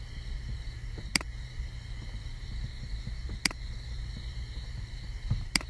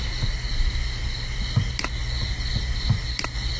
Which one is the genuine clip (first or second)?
second